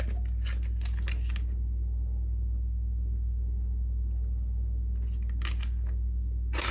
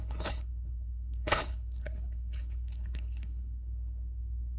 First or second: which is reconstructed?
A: second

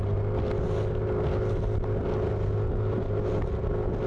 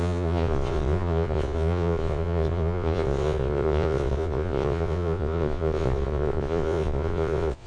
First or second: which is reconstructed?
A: second